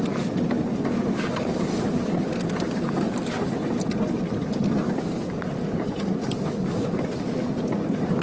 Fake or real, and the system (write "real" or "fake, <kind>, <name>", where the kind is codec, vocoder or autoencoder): real